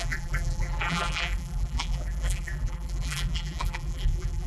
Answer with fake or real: fake